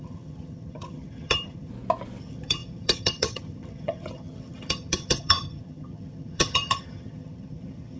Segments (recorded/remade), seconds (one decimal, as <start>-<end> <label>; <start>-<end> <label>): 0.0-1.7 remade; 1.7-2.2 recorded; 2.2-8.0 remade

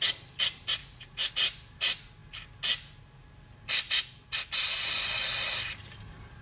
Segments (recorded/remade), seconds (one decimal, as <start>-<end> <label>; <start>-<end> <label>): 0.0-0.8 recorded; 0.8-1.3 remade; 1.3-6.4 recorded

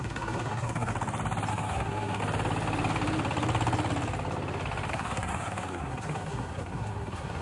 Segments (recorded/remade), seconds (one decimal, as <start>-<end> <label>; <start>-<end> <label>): 0.0-0.9 remade; 0.9-1.5 recorded; 1.5-2.2 remade; 2.2-4.9 recorded; 4.9-7.4 remade